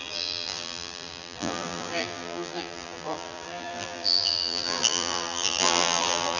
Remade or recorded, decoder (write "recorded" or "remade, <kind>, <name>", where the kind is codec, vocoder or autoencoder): remade, vocoder, BigVGAN v2